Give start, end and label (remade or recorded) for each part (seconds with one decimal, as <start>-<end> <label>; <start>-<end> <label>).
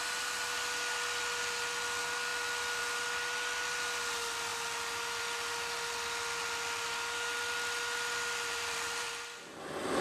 0.0-8.5 recorded; 8.5-10.0 remade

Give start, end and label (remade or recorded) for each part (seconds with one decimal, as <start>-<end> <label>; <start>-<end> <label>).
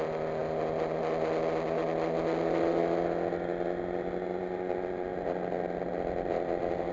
0.0-6.9 recorded